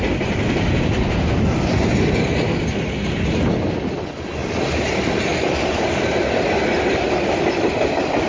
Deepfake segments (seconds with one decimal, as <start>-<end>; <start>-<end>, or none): none